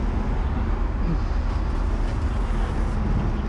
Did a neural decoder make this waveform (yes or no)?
no